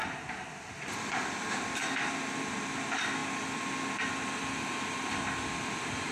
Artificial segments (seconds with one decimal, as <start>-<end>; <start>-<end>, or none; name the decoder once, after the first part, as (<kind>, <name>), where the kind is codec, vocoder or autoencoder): none

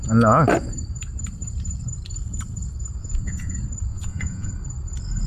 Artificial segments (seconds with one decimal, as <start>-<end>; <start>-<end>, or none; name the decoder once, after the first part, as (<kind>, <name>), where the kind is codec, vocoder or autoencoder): 3.0-3.5 (vocoder, Vocos); 3.9-4.5

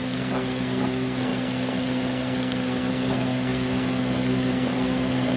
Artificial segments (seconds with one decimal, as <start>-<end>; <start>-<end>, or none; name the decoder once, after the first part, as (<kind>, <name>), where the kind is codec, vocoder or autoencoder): 0.0-5.4 (codec, SNAC)

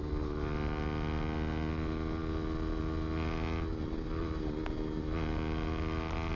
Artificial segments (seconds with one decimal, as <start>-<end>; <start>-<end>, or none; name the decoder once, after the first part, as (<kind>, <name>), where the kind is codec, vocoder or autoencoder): none

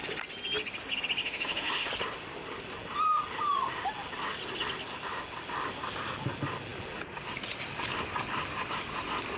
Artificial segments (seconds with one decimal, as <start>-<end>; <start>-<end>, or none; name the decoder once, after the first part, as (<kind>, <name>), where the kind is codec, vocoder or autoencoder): 1.2-1.9 (autoencoder, DAC-VAE)

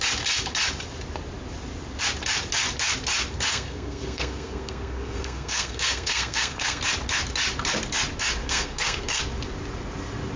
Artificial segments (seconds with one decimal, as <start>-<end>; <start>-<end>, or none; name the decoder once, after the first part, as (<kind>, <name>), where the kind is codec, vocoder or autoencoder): 3.5-6.8 (codec, SNAC); 8.4-9.2

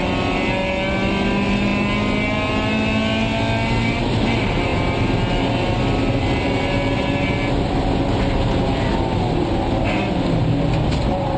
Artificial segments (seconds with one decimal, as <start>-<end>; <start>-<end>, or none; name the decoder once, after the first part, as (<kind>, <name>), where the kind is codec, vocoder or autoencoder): none

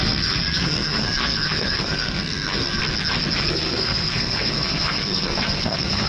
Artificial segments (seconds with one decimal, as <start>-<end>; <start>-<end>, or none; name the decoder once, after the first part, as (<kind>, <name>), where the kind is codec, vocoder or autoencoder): 0.0-2.8 (codec, SNAC); 3.5-6.1